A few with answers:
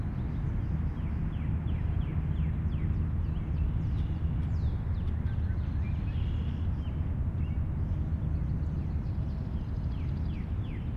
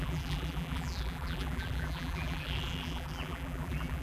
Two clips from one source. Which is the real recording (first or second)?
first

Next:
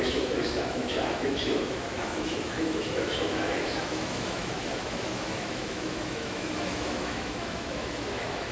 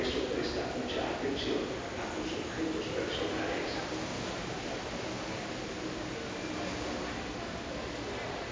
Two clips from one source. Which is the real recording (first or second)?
second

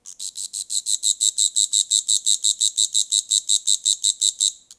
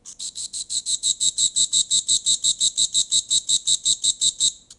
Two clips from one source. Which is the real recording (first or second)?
first